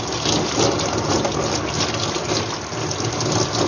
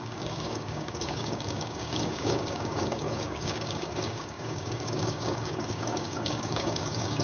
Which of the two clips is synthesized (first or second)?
second